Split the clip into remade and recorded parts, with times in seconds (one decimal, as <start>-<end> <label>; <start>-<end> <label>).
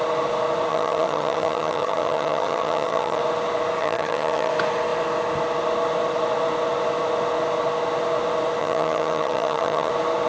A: 0.0-0.7 recorded; 0.7-3.2 remade; 3.2-3.8 recorded; 3.8-4.5 remade; 4.5-8.6 recorded; 8.6-9.9 remade; 9.9-10.3 recorded